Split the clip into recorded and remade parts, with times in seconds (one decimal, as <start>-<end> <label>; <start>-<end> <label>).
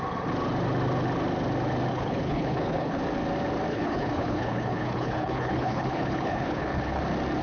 0.0-1.9 recorded; 1.9-3.0 remade; 3.0-3.7 recorded; 3.7-7.0 remade; 7.0-7.4 recorded